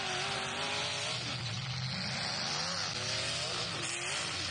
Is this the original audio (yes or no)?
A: yes